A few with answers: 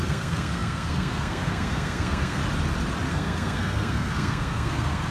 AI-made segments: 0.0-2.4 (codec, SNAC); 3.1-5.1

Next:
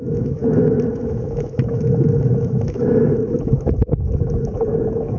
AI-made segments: 0.0-5.2 (autoencoder, DAC-VAE)

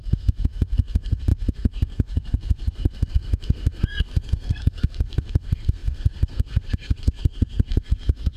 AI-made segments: 0.0-8.4 (codec, SNAC)

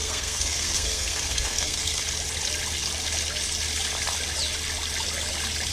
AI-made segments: 0.0-2.0 (codec, SNAC)

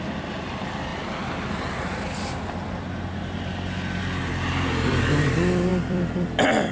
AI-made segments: 0.0-0.9 (vocoder, BigVGAN v2); 4.0-6.7

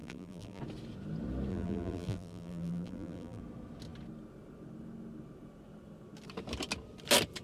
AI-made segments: 0.0-0.6 (vocoder, BigVGAN v2); 1.5-3.4

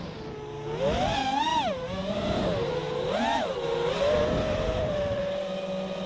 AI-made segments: 1.5-5.2 (vocoder, BigVGAN v2)